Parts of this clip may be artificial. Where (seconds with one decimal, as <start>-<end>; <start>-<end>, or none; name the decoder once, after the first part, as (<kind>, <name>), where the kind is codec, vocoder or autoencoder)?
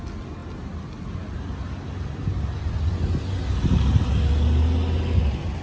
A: none